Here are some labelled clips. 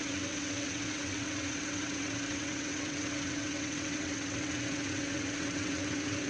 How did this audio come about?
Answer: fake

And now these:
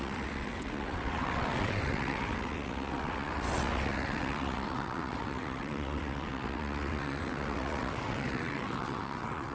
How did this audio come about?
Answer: fake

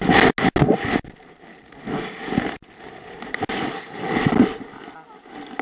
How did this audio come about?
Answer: real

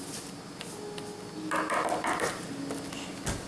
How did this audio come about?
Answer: real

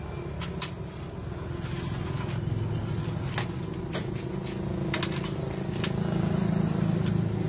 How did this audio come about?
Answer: real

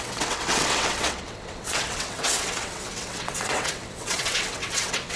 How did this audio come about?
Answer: fake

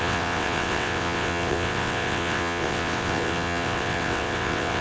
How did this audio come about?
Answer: fake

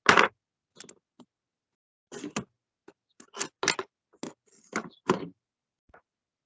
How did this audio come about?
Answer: real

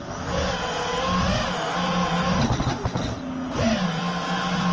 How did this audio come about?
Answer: real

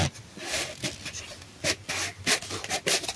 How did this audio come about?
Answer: real